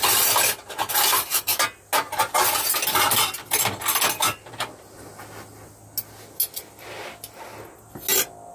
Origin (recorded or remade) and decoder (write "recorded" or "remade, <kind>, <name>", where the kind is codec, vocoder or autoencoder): recorded